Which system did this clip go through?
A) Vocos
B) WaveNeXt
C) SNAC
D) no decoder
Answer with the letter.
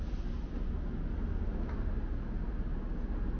D